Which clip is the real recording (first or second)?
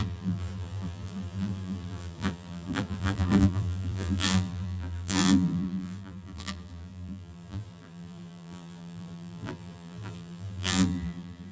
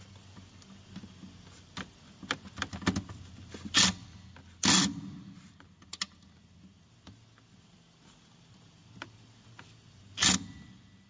second